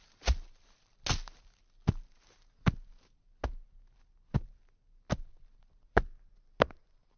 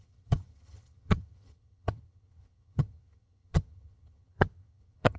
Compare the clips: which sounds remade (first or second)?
second